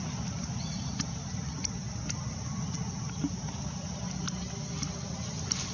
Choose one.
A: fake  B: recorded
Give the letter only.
B